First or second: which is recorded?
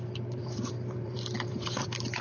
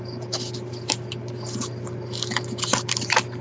second